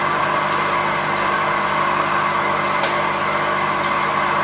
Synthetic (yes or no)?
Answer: no